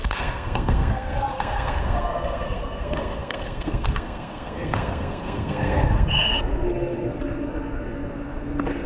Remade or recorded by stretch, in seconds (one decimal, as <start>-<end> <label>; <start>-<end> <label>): 0.0-8.9 remade